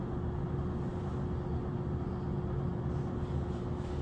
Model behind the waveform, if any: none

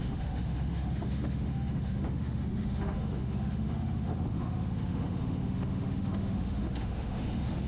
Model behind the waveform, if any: autoencoder, DAC-VAE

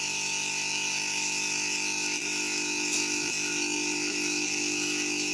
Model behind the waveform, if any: autoencoder, DAC-VAE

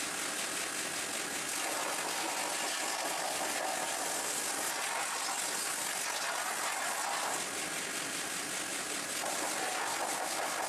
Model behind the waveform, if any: none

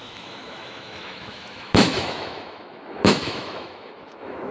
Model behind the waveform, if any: autoencoder, DAC-VAE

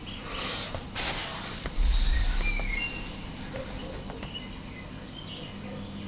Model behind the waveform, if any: none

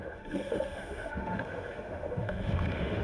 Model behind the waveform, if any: autoencoder, DAC-VAE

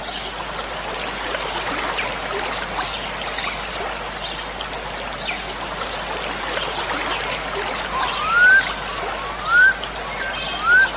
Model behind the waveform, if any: none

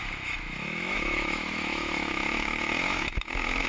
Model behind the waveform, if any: autoencoder, DAC-VAE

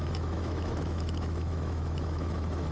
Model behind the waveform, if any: autoencoder, DAC-VAE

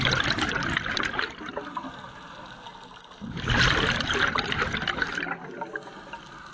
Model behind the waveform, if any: none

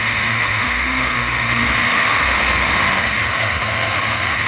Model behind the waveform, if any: autoencoder, DAC-VAE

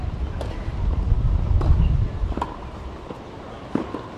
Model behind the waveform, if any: none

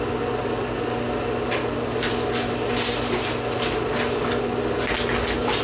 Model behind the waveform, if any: none